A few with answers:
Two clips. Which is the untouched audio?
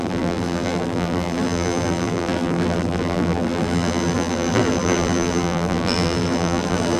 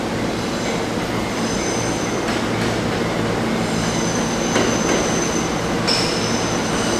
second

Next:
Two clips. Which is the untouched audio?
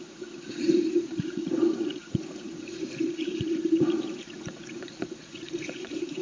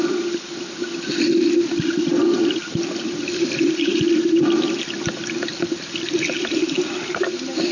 second